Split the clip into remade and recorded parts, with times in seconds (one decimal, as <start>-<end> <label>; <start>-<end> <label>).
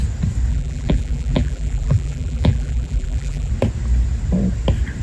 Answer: 0.0-0.5 recorded; 0.5-3.5 remade; 3.5-5.0 recorded